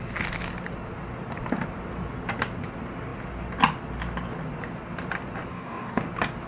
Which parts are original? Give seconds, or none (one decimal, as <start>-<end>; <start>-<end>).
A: 0.0-5.5; 6.0-6.5